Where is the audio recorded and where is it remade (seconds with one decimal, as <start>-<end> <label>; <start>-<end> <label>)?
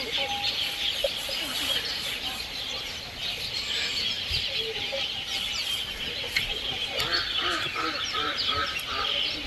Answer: 0.0-9.5 recorded